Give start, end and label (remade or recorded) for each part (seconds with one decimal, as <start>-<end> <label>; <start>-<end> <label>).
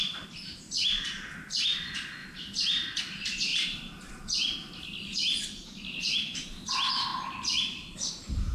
0.0-2.2 recorded; 2.2-3.0 remade; 3.0-3.5 recorded; 3.5-4.1 remade; 4.1-8.5 recorded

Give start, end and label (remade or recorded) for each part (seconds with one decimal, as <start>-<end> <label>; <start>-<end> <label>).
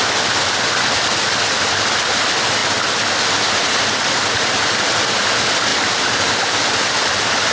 0.0-5.7 recorded; 5.7-6.9 remade; 6.9-7.5 recorded